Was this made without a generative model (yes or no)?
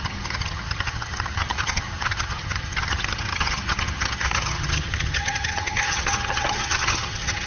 no